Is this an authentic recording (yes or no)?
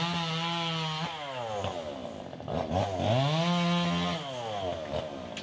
yes